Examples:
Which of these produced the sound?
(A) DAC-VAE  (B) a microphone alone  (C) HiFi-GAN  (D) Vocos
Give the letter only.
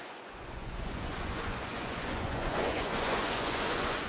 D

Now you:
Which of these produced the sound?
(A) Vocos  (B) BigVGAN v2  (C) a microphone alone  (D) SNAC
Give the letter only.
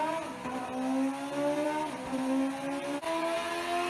C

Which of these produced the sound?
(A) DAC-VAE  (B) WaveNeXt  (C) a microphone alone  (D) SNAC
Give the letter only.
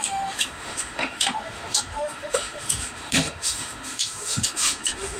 A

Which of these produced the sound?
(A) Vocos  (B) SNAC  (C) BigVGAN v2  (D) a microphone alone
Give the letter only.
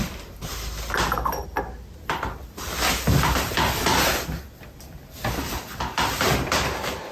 D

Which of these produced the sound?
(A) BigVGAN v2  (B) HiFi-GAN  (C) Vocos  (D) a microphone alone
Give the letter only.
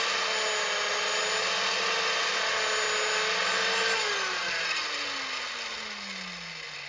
D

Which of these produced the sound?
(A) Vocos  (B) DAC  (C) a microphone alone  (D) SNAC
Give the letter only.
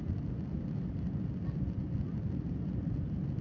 C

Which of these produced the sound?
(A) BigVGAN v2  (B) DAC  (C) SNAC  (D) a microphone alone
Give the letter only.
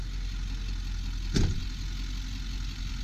D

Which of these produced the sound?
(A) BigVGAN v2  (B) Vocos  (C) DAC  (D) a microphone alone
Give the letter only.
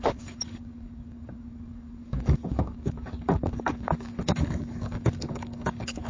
C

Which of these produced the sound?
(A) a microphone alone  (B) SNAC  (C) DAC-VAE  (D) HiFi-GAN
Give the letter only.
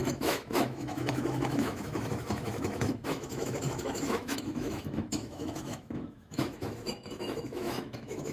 C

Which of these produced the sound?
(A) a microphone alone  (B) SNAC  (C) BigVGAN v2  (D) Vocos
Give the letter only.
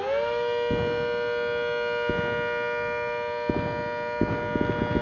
A